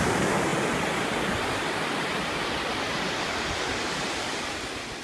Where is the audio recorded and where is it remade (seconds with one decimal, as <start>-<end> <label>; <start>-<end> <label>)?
0.0-5.0 recorded